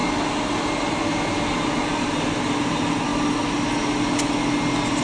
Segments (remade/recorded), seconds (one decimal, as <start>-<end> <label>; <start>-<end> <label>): 0.0-5.0 recorded